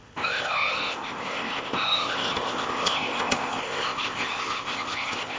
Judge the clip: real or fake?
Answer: fake